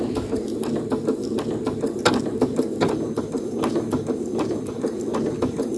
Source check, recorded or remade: recorded